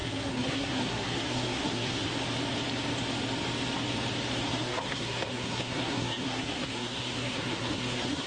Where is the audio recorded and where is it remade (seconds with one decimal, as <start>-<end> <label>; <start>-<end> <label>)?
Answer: 0.0-2.1 remade; 2.1-4.5 recorded; 4.5-8.3 remade